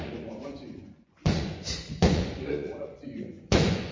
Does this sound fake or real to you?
fake